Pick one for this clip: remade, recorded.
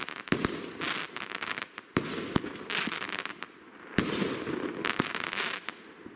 recorded